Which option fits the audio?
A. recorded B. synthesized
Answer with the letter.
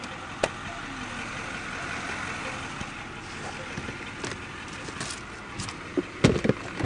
A